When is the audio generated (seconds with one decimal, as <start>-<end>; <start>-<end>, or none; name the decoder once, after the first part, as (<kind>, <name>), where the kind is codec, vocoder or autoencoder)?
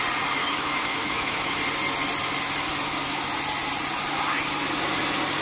0.4-1.6 (autoencoder, DAC-VAE)